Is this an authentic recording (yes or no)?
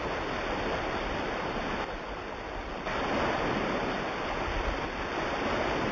yes